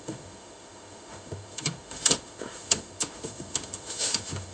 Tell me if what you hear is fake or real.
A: fake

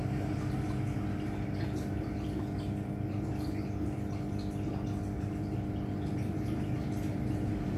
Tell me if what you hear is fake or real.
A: real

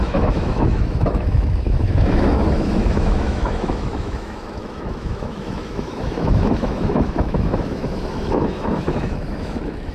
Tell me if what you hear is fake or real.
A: fake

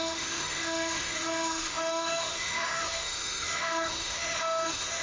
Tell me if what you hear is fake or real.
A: fake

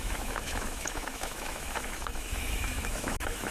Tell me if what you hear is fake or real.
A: fake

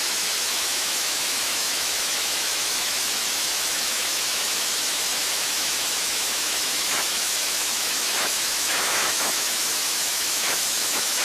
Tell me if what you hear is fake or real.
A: fake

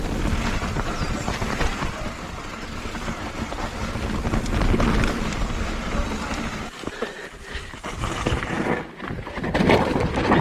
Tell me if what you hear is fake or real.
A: real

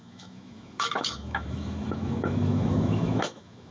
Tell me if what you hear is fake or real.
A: fake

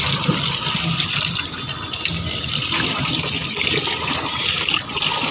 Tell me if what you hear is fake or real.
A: real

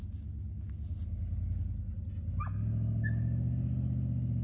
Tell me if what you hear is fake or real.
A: real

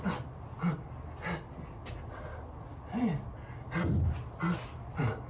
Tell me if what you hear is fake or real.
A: real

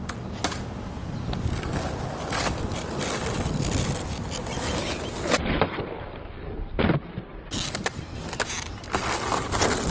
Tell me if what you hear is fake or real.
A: real